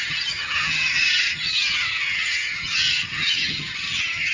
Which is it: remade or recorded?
remade